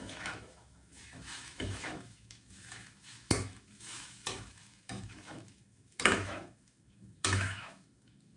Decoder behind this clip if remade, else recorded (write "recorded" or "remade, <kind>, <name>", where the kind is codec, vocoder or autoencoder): remade, autoencoder, DAC-VAE